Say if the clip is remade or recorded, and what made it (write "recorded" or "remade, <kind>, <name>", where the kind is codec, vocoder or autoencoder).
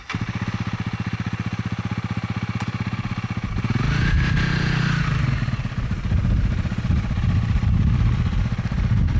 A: recorded